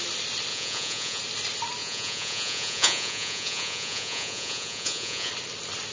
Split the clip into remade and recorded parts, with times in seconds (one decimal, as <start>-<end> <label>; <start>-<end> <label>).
0.0-0.5 recorded; 0.5-1.2 remade; 1.2-1.8 recorded; 1.8-5.3 remade; 5.3-5.9 recorded